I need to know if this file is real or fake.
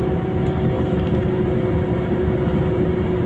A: real